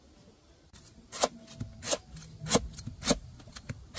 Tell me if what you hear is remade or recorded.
recorded